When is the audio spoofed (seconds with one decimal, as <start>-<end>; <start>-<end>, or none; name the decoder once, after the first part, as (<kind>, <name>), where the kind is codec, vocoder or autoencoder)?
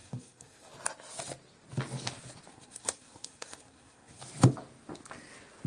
0.0-0.7 (codec, SNAC); 2.5-4.2